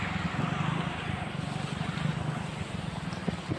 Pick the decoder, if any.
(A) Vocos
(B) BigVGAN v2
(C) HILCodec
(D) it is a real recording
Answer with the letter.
D